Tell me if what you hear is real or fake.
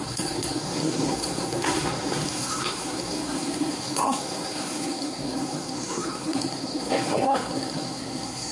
fake